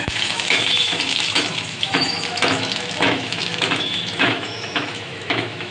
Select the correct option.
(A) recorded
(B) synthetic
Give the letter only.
B